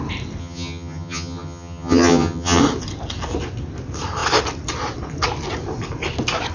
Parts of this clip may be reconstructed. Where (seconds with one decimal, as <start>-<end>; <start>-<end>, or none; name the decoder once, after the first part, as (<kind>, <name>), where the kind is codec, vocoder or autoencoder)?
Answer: 0.4-2.6 (vocoder, HiFi-GAN)